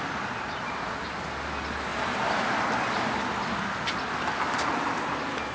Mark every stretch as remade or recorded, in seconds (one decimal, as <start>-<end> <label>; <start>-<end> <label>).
0.0-5.5 recorded